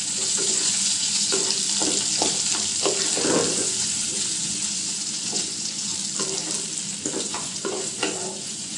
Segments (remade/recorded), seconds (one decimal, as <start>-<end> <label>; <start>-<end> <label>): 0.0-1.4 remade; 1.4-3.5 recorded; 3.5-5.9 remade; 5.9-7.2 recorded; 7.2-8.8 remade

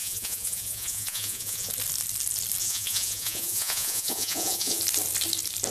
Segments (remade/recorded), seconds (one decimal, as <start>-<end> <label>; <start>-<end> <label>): 0.0-1.7 remade; 1.7-2.6 recorded; 2.6-4.8 remade; 4.8-5.7 recorded

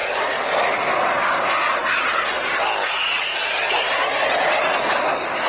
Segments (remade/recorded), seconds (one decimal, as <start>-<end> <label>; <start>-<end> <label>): 0.0-5.5 recorded